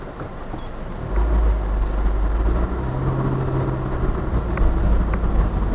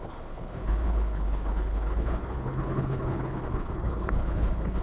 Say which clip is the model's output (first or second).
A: second